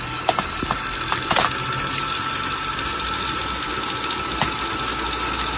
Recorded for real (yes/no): yes